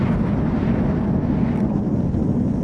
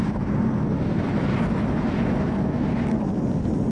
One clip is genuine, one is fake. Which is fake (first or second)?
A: first